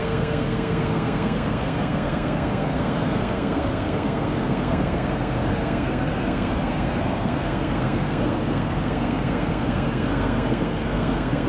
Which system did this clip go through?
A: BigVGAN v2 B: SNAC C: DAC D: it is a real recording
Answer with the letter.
B